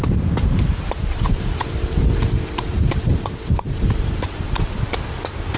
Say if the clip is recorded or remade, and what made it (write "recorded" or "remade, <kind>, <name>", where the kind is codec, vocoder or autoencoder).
remade, vocoder, BigVGAN v2